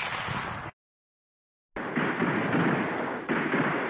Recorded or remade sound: recorded